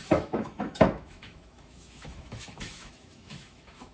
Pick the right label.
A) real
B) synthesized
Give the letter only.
B